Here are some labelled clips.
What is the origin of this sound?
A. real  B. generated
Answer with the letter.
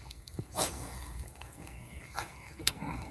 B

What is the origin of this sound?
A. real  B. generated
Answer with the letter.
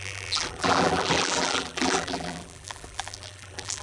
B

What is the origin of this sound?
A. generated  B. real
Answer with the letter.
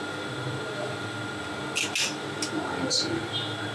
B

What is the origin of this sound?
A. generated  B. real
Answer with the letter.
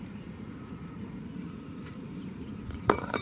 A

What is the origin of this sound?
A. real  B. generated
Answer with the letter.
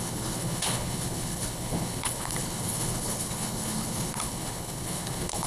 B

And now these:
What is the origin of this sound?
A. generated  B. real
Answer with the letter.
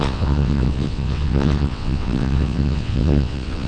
A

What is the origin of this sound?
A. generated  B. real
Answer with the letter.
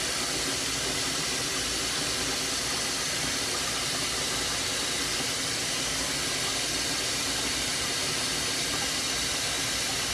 B